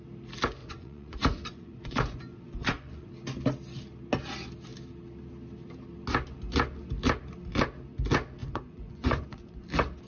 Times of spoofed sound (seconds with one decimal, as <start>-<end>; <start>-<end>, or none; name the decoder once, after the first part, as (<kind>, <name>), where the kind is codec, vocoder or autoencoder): 0.6-3.1 (vocoder, Vocos); 8.4-9.6